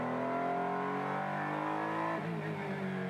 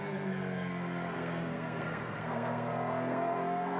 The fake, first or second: second